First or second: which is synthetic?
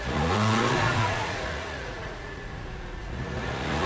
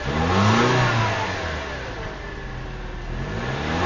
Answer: first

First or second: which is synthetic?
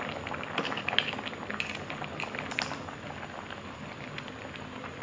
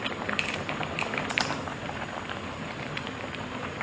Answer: second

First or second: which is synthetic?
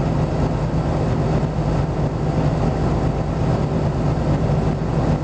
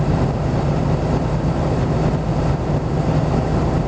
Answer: second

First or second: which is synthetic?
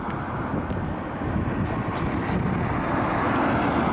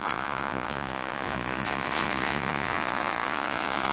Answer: second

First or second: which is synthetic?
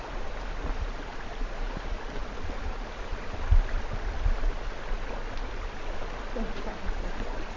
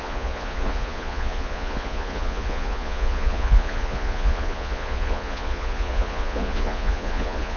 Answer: second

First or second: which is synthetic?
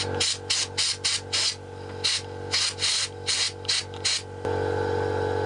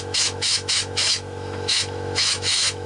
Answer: second